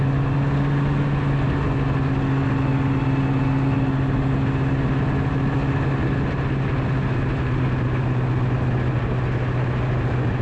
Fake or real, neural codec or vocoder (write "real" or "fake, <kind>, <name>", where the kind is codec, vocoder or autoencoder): real